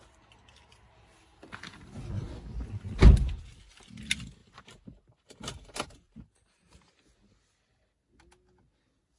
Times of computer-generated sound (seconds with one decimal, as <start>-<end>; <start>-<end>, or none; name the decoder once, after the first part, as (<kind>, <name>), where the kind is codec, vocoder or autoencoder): 4.4-7.0 (vocoder, BigVGAN v2)